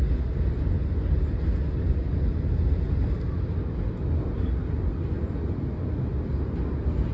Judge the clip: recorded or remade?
recorded